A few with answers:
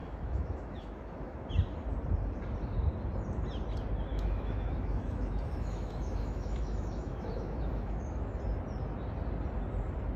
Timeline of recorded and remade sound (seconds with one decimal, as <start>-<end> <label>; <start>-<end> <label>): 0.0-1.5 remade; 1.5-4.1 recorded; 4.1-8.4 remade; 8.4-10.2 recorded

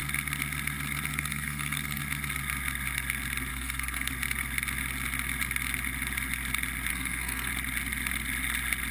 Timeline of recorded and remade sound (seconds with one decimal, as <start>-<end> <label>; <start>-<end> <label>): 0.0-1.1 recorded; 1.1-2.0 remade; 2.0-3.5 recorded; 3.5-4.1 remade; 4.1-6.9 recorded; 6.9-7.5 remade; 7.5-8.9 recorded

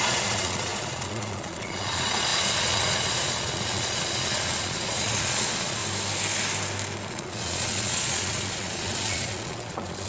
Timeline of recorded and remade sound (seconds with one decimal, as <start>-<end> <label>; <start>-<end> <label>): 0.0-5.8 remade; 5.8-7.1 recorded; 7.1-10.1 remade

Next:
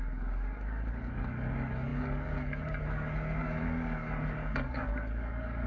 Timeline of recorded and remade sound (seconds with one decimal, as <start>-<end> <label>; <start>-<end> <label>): 0.0-5.7 remade

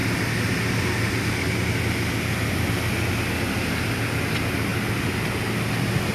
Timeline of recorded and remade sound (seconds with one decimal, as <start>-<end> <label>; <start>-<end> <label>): 0.0-6.1 recorded

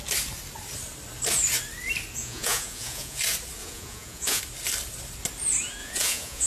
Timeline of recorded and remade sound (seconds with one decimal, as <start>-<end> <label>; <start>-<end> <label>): 0.0-2.2 recorded; 2.2-3.2 remade; 3.2-3.6 recorded; 3.6-4.4 remade; 4.4-5.8 recorded; 5.8-6.5 remade

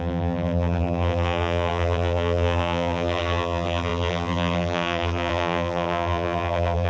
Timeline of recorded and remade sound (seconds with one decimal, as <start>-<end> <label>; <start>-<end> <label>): 0.0-6.9 remade

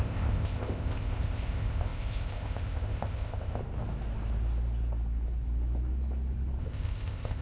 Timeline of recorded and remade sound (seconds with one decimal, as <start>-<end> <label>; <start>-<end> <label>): 0.0-3.6 remade; 3.6-6.6 recorded; 6.6-7.4 remade